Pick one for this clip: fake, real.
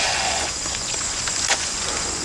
fake